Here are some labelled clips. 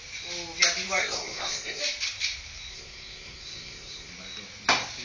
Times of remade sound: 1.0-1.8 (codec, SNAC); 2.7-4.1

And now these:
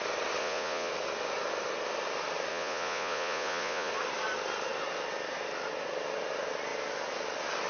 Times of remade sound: 0.4-0.9 (vocoder, Vocos); 2.5-3.9

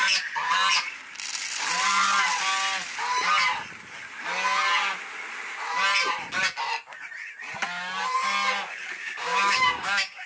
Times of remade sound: 9.0-10.3 (codec, DAC)

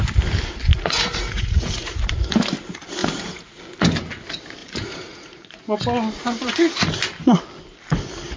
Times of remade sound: 0.7-2.0 (vocoder, Vocos); 3.0-3.6; 4.6-5.6; 6.2-6.9

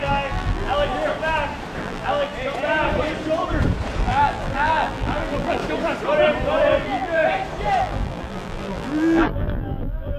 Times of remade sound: 0.0-0.9 (vocoder, BigVGAN v2); 1.8-2.3; 4.0-5.6; 6.8-7.2; 7.8-10.2

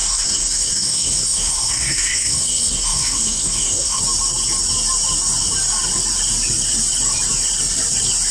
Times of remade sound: 0.0-4.0 (codec, SNAC)